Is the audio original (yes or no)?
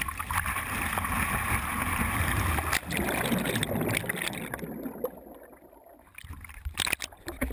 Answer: yes